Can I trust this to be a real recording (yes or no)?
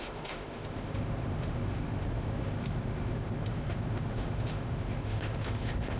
no